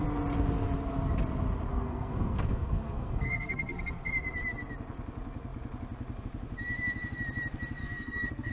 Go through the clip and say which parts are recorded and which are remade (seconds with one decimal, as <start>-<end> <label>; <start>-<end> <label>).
0.0-1.7 recorded; 1.7-4.1 remade; 4.1-7.8 recorded; 7.8-8.5 remade